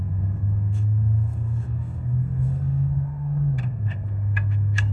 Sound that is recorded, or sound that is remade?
remade